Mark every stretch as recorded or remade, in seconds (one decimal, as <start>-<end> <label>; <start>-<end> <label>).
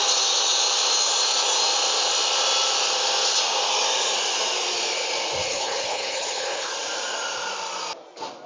0.0-5.5 recorded; 5.5-6.7 remade; 6.7-8.5 recorded